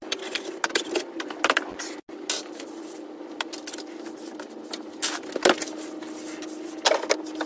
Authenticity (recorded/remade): recorded